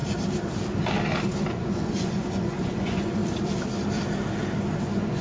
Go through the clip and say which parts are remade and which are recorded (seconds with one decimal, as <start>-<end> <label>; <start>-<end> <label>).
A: 0.0-1.5 recorded; 1.5-3.2 remade; 3.2-4.8 recorded; 4.8-5.2 remade